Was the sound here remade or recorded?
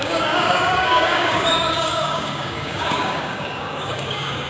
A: remade